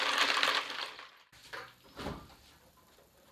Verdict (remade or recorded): recorded